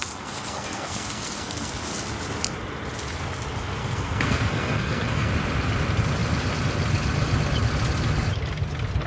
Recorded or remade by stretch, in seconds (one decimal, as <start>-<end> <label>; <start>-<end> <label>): 0.0-1.7 remade; 1.7-3.8 recorded; 3.8-5.3 remade; 5.3-9.1 recorded